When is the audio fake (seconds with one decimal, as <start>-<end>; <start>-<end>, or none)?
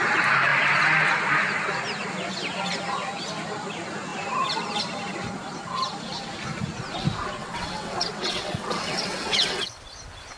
7.4-9.8